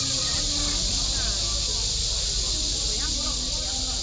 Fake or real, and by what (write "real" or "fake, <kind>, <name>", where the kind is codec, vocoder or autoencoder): real